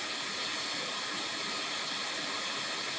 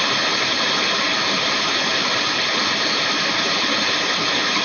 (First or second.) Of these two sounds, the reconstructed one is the second